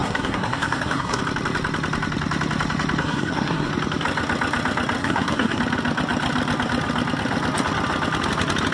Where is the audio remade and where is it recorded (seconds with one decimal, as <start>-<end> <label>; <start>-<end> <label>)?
0.0-1.2 remade; 1.2-3.0 recorded; 3.0-3.7 remade; 3.7-5.0 recorded; 5.0-5.6 remade; 5.6-8.7 recorded